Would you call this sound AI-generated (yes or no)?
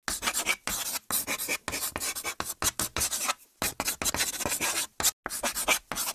no